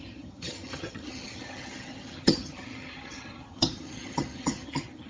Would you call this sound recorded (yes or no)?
no